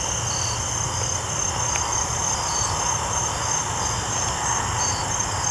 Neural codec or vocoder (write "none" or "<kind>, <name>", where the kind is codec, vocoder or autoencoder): none